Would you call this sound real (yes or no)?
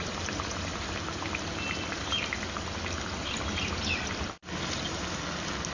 yes